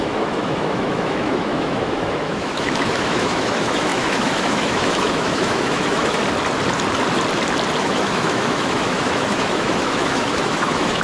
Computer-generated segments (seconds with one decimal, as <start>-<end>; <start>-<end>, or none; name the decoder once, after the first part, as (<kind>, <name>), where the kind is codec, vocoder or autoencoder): 0.0-6.2 (autoencoder, DAC-VAE); 7.8-11.0